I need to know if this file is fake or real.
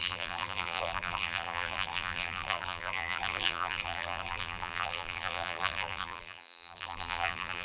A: fake